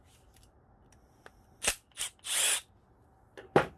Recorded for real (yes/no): yes